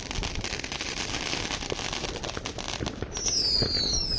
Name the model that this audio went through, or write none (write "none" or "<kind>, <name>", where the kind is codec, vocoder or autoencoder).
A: none